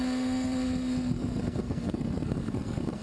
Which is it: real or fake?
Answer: fake